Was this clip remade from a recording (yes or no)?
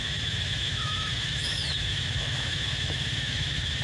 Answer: yes